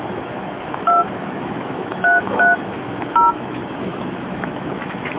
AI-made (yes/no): yes